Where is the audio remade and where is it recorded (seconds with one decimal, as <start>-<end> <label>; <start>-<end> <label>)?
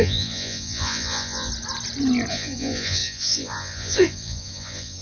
0.0-1.5 remade; 1.5-2.3 recorded; 2.3-5.0 remade